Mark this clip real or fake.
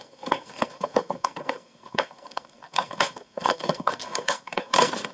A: fake